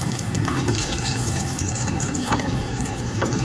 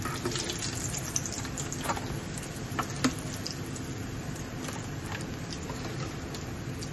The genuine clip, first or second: second